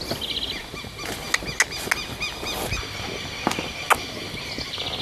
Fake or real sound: real